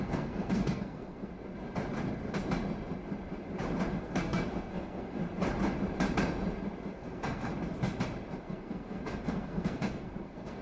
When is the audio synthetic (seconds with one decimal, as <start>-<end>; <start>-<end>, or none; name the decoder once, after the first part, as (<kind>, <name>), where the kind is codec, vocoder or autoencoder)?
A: 0.0-1.3 (codec, SNAC); 4.0-5.2; 6.9-7.5; 8.4-10.6